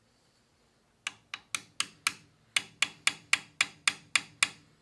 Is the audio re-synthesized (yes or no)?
no